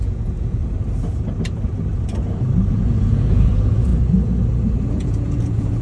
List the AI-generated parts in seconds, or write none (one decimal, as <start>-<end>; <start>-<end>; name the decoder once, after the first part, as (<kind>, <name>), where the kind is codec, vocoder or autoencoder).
0.0-0.6 (vocoder, Vocos); 2.7-3.9; 4.9-5.8